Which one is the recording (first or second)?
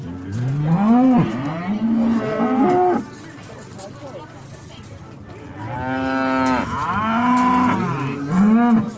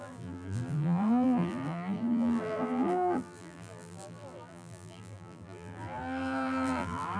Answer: first